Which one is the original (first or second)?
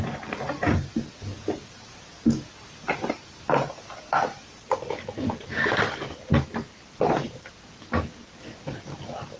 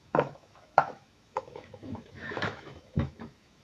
first